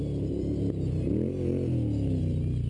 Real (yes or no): yes